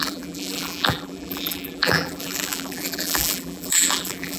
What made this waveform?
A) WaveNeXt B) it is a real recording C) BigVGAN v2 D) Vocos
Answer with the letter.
C